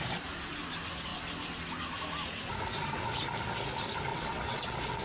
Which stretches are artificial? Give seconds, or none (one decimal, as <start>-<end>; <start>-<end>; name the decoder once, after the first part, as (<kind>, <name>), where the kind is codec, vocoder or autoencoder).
4.1-5.0 (vocoder, WaveNeXt)